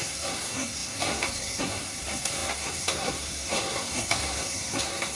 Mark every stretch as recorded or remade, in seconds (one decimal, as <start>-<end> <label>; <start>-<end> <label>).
0.0-5.2 remade